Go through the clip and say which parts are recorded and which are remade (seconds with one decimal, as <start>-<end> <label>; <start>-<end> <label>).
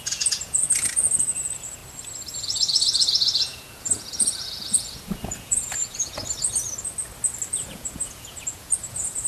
0.0-1.8 remade; 1.8-2.4 recorded; 2.4-6.2 remade; 6.2-7.5 recorded; 7.5-9.3 remade